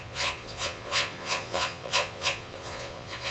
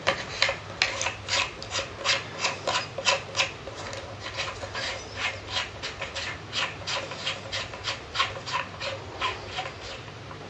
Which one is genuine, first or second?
second